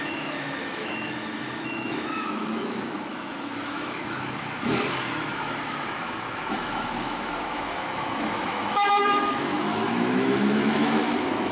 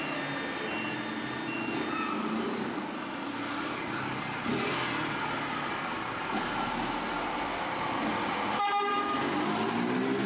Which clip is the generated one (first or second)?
first